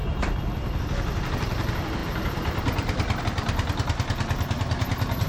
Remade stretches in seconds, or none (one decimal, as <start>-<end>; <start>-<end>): none

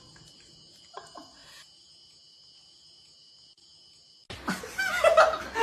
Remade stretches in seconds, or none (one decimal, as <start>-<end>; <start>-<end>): none

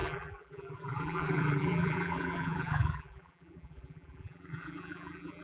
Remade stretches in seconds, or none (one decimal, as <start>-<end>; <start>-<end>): 0.0-5.4

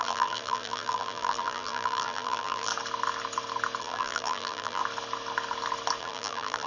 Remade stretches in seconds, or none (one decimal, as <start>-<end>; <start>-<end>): 0.0-2.7; 3.8-4.8; 6.0-6.7